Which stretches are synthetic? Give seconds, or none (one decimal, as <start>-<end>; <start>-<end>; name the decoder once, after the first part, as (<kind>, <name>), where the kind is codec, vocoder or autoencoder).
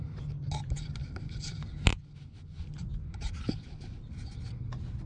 none